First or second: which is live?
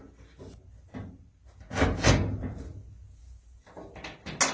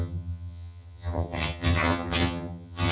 first